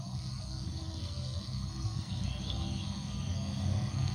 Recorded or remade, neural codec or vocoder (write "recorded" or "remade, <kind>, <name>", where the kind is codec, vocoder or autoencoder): remade, codec, SNAC